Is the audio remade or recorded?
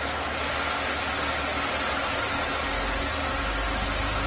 recorded